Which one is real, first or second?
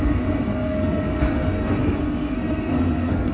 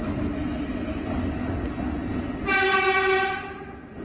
second